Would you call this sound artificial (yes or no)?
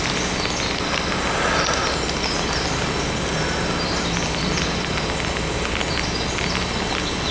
no